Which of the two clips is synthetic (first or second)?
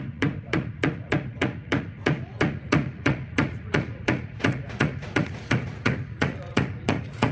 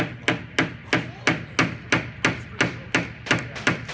first